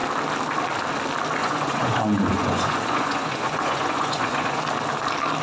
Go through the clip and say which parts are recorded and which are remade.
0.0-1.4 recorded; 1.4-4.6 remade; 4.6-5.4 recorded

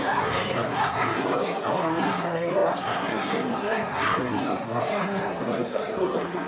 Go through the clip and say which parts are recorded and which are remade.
0.0-6.5 remade

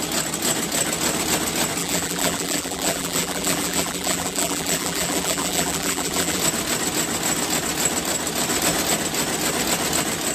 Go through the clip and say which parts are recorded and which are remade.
0.0-1.8 recorded; 1.8-6.4 remade; 6.4-10.3 recorded

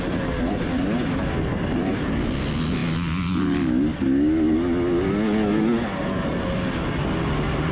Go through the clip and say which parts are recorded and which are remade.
0.0-1.5 recorded; 1.5-2.1 remade; 2.1-6.3 recorded; 6.3-6.9 remade; 6.9-7.7 recorded

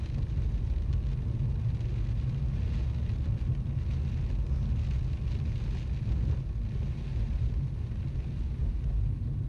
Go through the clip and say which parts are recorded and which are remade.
0.0-9.5 recorded

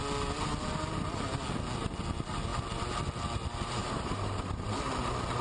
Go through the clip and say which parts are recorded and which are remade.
0.0-3.8 recorded; 3.8-4.7 remade; 4.7-5.4 recorded